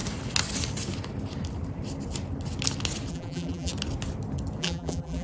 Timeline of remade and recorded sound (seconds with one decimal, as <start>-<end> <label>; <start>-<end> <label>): 0.0-3.1 recorded; 3.1-3.7 remade; 3.7-4.6 recorded; 4.6-5.2 remade